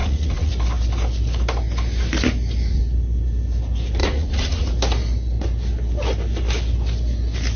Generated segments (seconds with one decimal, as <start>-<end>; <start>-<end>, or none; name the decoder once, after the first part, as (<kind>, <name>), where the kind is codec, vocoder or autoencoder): 0.0-0.5 (vocoder, Vocos); 4.0-4.7